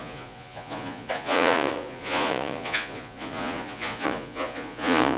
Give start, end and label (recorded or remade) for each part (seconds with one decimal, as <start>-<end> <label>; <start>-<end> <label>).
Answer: 0.0-5.2 remade